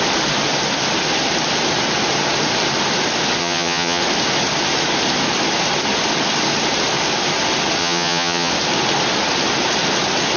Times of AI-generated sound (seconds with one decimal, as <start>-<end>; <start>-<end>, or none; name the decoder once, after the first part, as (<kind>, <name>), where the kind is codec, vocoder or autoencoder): 3.4-4.0 (vocoder, HiFi-GAN); 7.8-8.5